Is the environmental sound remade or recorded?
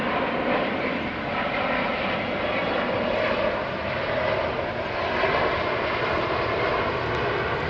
recorded